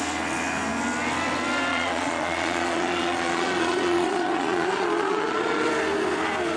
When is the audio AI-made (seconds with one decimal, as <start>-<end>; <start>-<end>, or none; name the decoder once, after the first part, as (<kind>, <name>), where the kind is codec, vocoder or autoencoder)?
1.7-5.7 (vocoder, Vocos)